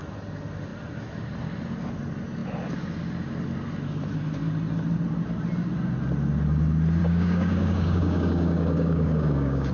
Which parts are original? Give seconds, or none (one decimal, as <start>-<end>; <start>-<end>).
0.0-7.0